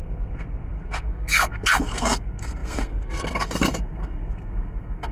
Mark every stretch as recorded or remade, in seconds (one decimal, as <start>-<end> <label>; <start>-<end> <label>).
0.0-5.1 remade